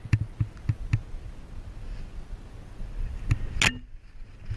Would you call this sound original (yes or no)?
yes